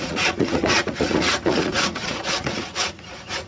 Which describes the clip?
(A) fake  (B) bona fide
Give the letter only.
A